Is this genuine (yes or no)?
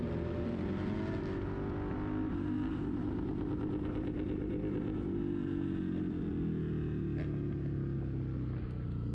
yes